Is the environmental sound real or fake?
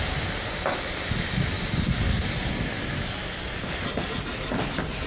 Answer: real